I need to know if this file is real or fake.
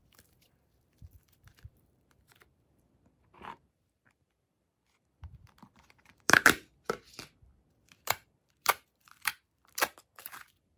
fake